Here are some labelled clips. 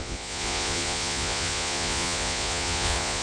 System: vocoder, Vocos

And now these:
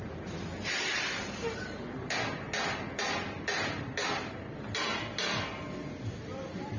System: none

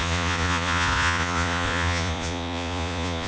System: vocoder, Vocos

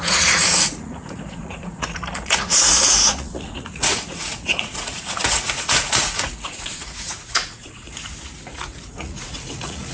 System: vocoder, Vocos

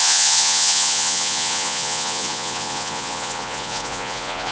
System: vocoder, Vocos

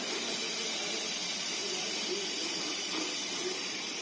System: none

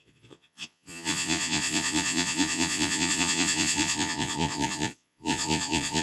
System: vocoder, Vocos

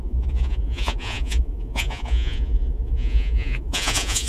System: vocoder, Vocos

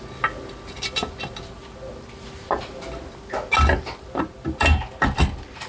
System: none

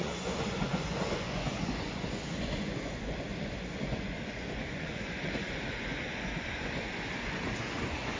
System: vocoder, Vocos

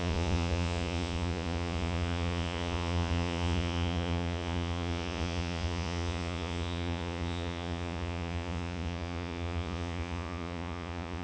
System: vocoder, Vocos